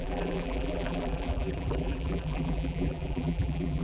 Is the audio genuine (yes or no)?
no